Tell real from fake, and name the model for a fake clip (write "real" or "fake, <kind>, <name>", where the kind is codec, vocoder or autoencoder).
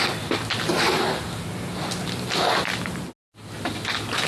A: real